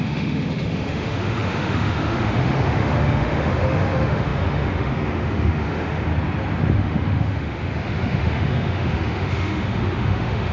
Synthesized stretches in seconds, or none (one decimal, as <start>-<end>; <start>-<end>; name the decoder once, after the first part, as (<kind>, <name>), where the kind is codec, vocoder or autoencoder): 0.0-6.1 (autoencoder, DAC-VAE); 6.7-10.5